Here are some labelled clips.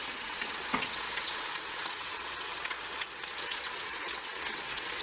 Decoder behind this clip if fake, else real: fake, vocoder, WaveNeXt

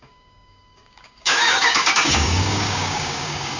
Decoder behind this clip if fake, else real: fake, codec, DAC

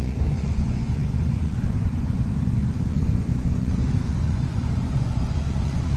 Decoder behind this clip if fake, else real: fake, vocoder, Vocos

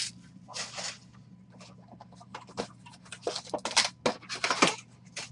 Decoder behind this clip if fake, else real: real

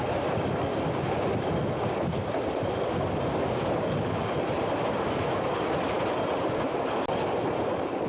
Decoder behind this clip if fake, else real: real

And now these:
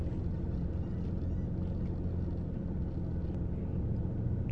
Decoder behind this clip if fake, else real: real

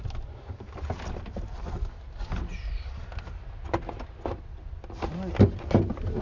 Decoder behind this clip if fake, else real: real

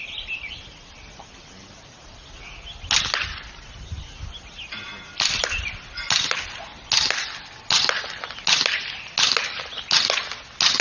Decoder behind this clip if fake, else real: real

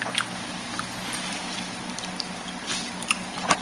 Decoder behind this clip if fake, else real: real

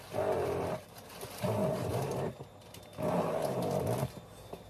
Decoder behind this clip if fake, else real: real